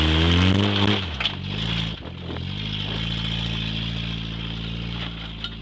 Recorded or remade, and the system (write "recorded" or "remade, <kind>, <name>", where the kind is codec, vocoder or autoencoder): recorded